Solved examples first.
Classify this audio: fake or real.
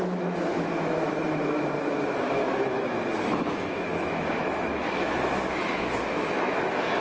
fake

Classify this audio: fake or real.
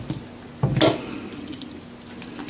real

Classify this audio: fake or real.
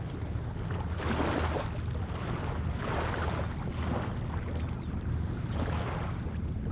real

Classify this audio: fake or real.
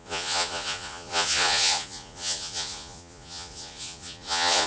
fake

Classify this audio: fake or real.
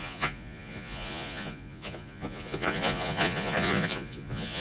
fake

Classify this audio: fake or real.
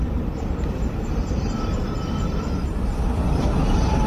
fake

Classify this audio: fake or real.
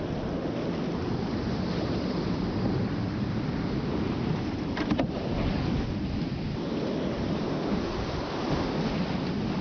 real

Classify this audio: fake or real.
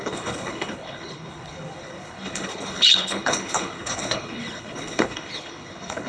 fake